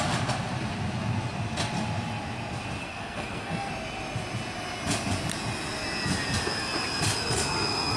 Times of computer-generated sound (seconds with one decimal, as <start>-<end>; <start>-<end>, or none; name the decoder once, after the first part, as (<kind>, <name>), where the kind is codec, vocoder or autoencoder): 2.8-3.7 (codec, SNAC)